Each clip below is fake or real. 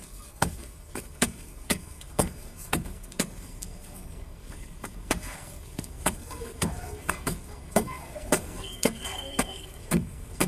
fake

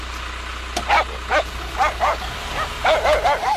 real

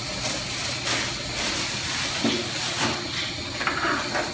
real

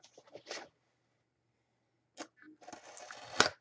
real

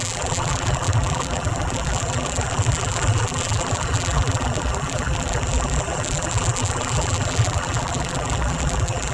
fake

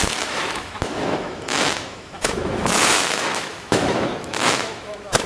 fake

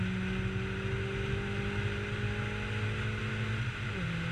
real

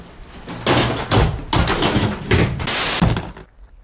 real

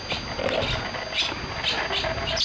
real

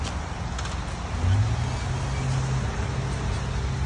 real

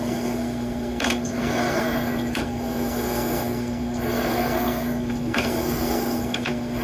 fake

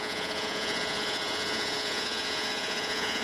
fake